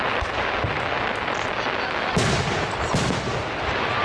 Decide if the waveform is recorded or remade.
recorded